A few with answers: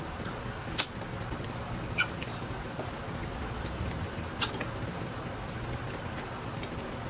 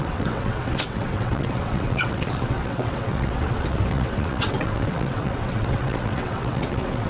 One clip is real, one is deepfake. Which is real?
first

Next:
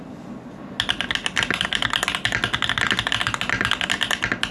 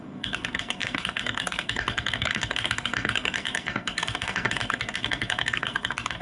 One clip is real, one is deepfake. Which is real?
first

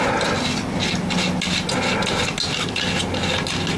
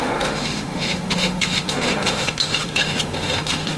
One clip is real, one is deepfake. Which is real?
first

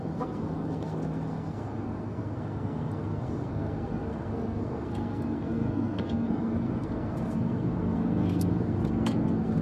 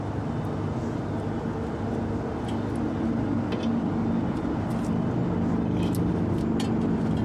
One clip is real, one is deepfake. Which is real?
second